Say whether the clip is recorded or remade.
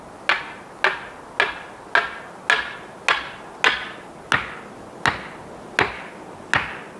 recorded